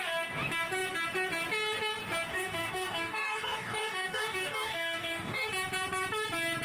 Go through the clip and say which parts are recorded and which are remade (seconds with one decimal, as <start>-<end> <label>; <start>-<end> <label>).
0.0-2.3 recorded; 2.3-5.5 remade; 5.5-6.6 recorded